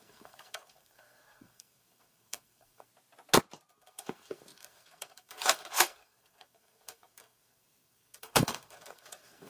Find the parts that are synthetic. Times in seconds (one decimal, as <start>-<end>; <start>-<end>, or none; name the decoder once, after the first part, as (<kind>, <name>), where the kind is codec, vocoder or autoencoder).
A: 0.0-2.9 (codec, SNAC); 3.7-9.5